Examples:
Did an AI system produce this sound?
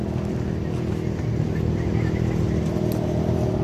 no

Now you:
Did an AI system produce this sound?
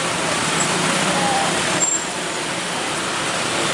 yes